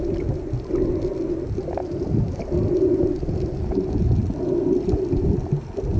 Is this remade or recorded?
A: recorded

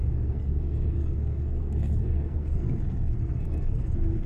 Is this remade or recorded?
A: remade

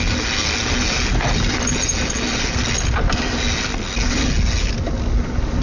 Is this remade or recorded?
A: recorded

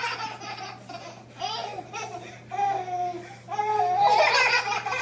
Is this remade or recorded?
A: recorded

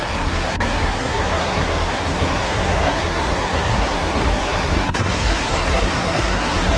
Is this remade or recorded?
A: remade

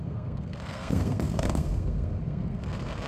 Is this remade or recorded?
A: remade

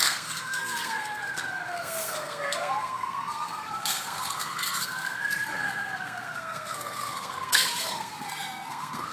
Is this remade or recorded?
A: remade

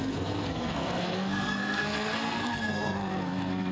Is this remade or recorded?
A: remade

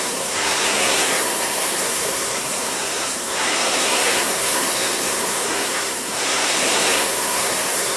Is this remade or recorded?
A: remade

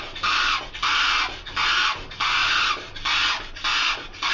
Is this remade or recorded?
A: recorded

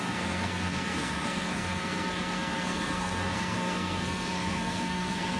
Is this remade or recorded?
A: remade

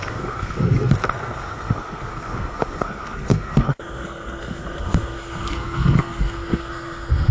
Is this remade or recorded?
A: remade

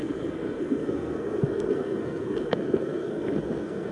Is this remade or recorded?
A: remade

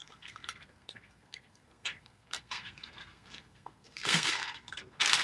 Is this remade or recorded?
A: remade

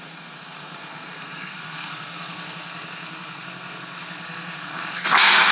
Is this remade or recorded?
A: remade